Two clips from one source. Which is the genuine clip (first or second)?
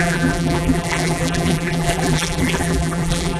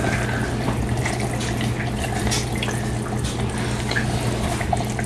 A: second